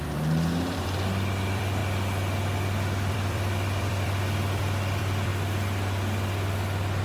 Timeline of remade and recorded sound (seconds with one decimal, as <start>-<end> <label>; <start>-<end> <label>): 0.0-1.8 remade; 1.8-3.1 recorded; 3.1-5.3 remade; 5.3-7.0 recorded